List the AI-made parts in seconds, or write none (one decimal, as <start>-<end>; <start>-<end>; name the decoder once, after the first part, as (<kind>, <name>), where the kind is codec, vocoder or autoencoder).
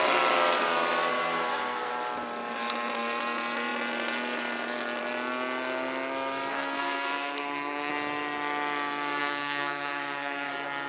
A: 1.1-1.9 (codec, SNAC); 6.5-7.9; 9.2-10.5